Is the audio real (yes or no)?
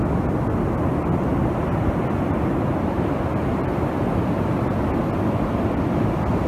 yes